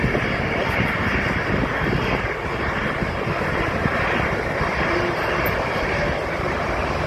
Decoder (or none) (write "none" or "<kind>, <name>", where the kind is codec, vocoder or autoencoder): none